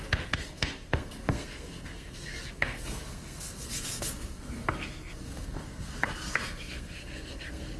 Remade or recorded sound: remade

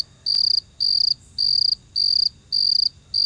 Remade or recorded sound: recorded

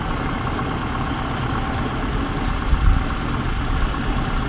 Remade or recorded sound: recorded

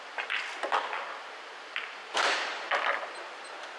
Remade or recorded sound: recorded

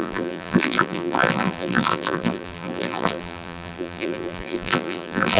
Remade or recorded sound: remade